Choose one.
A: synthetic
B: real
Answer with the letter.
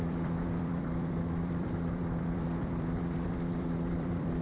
A